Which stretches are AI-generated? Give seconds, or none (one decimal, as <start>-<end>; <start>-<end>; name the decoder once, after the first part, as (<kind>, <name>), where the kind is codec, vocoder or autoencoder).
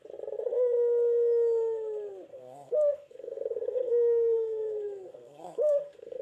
2.3-6.2 (codec, SNAC)